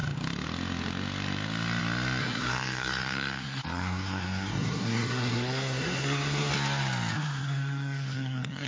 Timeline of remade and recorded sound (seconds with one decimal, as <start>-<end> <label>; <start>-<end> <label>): 0.0-2.2 recorded; 2.2-6.5 remade; 6.5-7.1 recorded; 7.1-8.7 remade